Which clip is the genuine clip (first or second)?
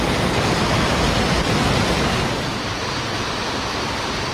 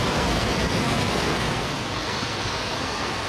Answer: first